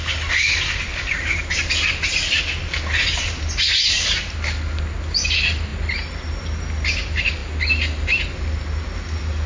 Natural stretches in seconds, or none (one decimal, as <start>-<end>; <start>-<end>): 0.0-9.5